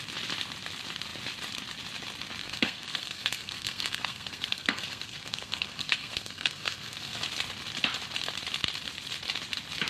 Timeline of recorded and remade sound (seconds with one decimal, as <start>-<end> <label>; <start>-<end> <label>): 0.0-2.4 recorded; 2.4-7.2 remade; 7.2-9.9 recorded